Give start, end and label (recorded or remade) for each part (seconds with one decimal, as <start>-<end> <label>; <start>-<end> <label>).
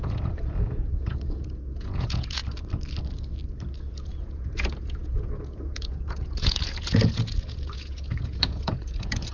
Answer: 0.0-2.4 remade; 2.4-3.8 recorded; 3.8-9.3 remade